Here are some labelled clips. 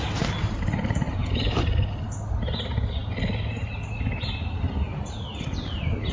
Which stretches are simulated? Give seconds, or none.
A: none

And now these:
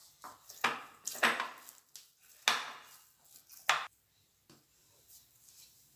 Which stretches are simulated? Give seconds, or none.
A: none

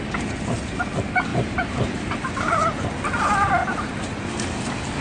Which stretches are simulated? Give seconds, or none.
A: 1.3-2.7 (vocoder, BigVGAN v2); 3.6-4.2

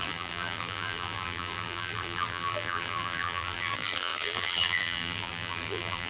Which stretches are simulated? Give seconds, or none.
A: 0.0-6.1 (vocoder, BigVGAN v2)

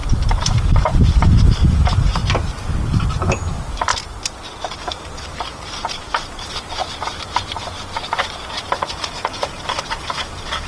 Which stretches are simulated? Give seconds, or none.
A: 0.0-2.2 (vocoder, BigVGAN v2); 3.2-3.9; 4.8-6.8; 8.9-10.7